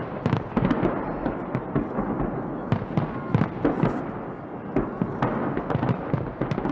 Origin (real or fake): real